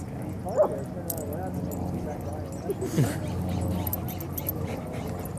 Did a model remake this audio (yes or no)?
no